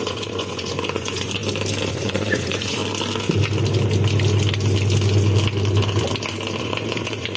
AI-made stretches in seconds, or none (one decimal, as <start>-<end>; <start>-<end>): 0.0-1.4; 1.9-2.8; 6.6-7.4